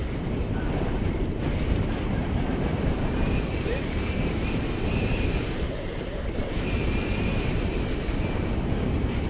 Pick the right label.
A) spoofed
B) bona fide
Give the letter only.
A